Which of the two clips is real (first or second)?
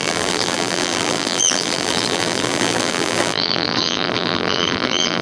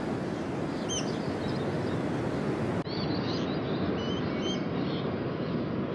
second